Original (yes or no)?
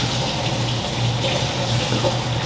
yes